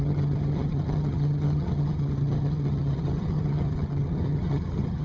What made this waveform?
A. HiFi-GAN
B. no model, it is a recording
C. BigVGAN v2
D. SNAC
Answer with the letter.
A